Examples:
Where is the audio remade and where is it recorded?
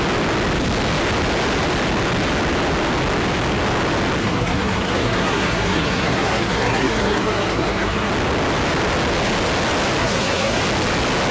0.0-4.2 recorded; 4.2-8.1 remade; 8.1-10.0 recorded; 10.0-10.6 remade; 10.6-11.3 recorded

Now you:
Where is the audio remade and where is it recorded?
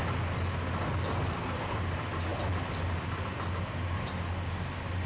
0.0-5.1 recorded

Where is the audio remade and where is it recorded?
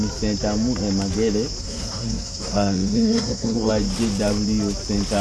0.0-1.6 recorded; 1.6-3.7 remade; 3.7-5.2 recorded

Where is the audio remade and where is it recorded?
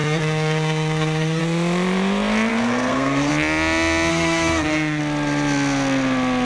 0.0-1.4 remade; 1.4-2.5 recorded; 2.5-3.3 remade; 3.3-4.1 recorded; 4.1-5.0 remade; 5.0-6.4 recorded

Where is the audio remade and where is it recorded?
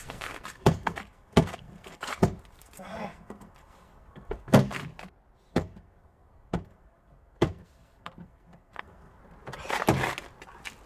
0.0-4.8 remade; 4.8-5.5 recorded; 5.5-9.2 remade; 9.2-10.9 recorded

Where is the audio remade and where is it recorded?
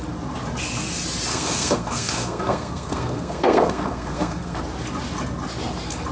0.0-1.3 recorded; 1.3-4.6 remade; 4.6-6.1 recorded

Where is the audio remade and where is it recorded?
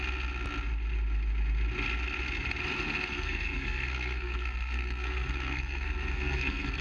0.0-3.1 recorded; 3.1-6.8 remade